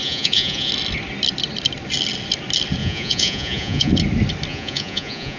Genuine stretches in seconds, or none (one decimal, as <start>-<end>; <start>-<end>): 0.7-2.8; 3.9-4.5